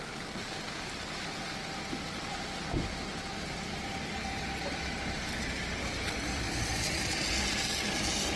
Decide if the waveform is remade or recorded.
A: recorded